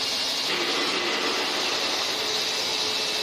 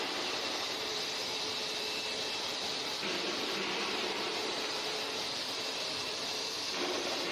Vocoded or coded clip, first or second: second